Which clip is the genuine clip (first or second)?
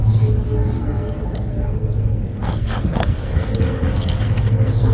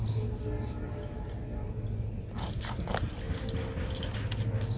second